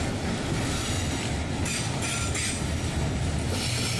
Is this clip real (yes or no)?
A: yes